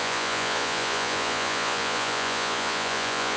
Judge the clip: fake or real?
fake